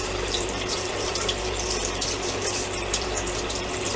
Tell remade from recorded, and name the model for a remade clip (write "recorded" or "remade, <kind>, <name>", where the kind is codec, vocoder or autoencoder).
remade, vocoder, BigVGAN v2